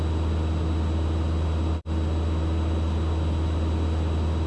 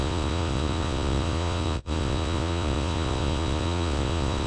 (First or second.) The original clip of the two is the first